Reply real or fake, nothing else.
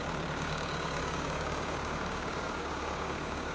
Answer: fake